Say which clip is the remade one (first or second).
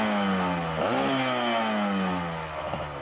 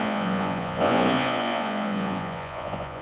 second